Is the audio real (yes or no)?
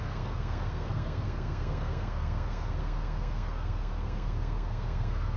no